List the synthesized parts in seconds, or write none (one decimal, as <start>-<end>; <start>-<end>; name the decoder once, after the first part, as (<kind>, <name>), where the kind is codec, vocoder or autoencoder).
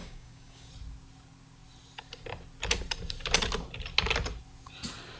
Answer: 0.0-0.7 (codec, DAC)